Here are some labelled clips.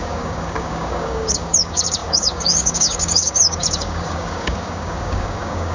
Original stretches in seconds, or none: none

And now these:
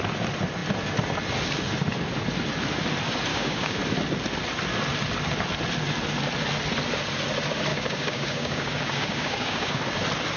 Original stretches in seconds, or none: 0.0-3.3; 3.8-7.7; 9.8-10.4

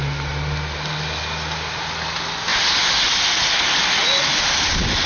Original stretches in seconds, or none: 0.0-5.1

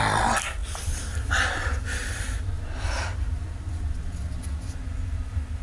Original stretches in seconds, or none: 0.0-5.6

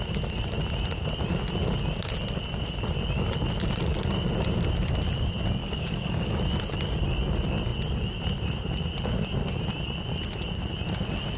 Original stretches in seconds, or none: 0.0-5.6; 6.3-11.4

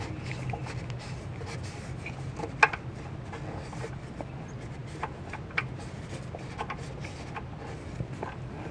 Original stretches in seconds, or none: 0.0-8.7